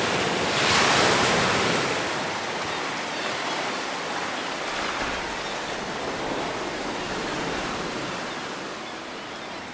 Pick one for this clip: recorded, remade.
recorded